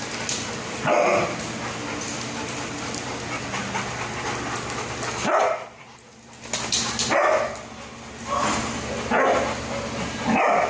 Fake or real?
real